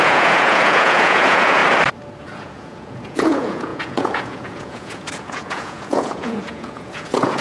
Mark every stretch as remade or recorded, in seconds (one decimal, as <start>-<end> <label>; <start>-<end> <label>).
0.0-1.6 remade; 1.6-2.2 recorded; 2.2-7.4 remade